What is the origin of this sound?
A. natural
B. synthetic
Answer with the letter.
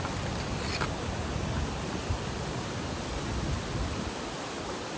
A